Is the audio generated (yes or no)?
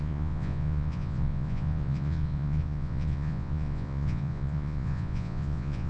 yes